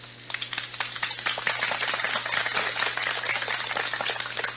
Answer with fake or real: real